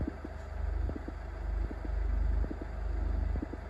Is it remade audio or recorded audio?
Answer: recorded